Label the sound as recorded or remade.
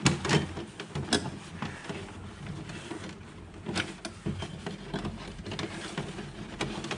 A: recorded